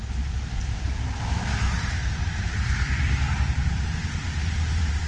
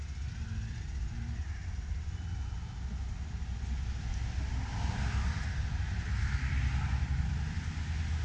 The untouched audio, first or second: second